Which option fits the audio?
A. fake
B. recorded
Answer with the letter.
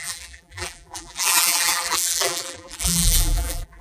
A